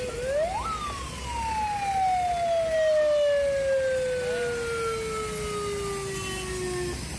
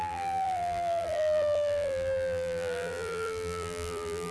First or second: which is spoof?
second